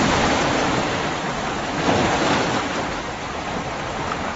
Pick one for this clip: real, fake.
fake